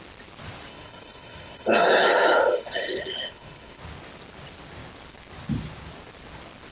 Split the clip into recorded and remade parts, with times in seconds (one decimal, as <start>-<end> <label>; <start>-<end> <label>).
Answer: 0.0-0.7 recorded; 0.7-3.8 remade; 3.8-6.7 recorded